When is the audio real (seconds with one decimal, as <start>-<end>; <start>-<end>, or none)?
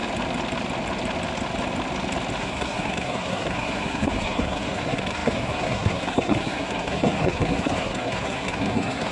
0.0-2.4